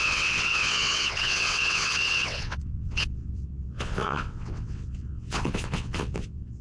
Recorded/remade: remade